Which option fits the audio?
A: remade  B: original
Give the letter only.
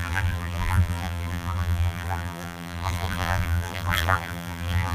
A